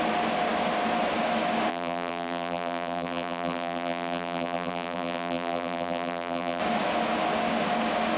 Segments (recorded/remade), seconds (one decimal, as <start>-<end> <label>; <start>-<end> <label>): 0.0-1.7 recorded; 1.7-6.6 remade; 6.6-8.2 recorded

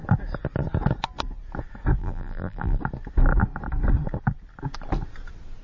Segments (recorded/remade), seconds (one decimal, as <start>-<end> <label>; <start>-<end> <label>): 0.0-2.0 recorded; 2.0-2.8 remade; 2.8-5.6 recorded

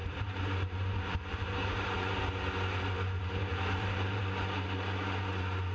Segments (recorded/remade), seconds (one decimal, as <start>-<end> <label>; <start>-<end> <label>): 0.0-2.2 remade; 2.2-3.5 recorded; 3.5-4.2 remade; 4.2-5.7 recorded

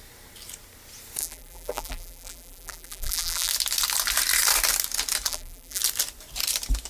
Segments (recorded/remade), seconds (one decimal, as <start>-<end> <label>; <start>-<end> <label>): 0.0-1.2 recorded; 1.2-3.5 remade; 3.5-5.3 recorded; 5.3-5.8 remade; 5.8-6.9 recorded

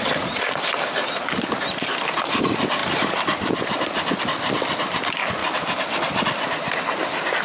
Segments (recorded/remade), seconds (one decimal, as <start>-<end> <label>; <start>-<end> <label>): 0.0-2.8 recorded; 2.8-4.2 remade; 4.2-5.4 recorded; 5.4-6.8 remade; 6.8-7.4 recorded